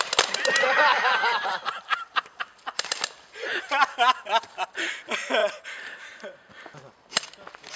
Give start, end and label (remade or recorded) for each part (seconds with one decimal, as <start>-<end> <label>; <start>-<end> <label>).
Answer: 0.0-0.9 recorded; 0.9-2.4 remade; 2.4-3.4 recorded; 3.4-4.8 remade; 4.8-5.4 recorded; 5.4-6.5 remade; 6.5-7.8 recorded